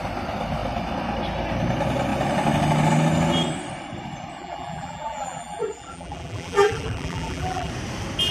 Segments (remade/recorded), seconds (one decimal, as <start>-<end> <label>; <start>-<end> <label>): 0.0-4.4 recorded; 4.4-7.7 remade; 7.7-8.3 recorded